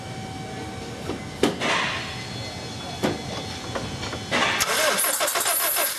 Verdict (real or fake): real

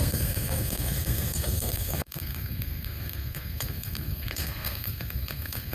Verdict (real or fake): fake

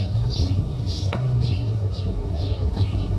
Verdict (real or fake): fake